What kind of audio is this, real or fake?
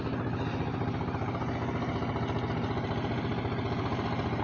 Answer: real